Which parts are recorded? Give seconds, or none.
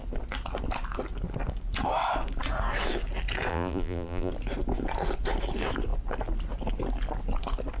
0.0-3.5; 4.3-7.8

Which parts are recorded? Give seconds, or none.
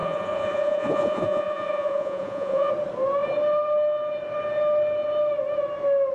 2.7-6.1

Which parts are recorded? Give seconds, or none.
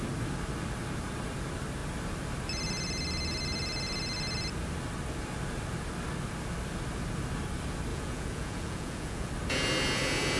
0.0-7.9; 9.3-10.4